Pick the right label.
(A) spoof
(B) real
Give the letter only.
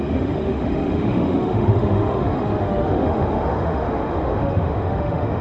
A